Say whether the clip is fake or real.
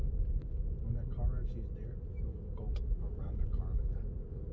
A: real